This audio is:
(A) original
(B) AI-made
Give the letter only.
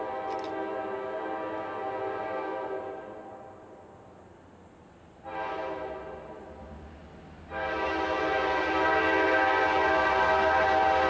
A